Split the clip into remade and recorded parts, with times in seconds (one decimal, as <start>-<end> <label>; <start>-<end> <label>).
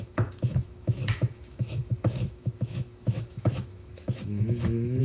0.0-5.0 remade